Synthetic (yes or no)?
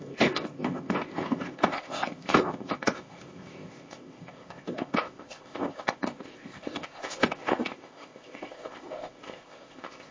yes